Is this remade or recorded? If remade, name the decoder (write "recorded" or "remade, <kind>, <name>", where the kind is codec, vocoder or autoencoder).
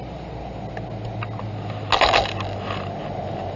recorded